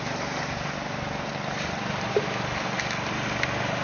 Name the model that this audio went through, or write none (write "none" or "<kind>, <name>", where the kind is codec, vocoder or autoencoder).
vocoder, BigVGAN v2